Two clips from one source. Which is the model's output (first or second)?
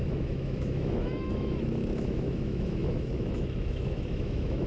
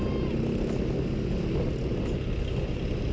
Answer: first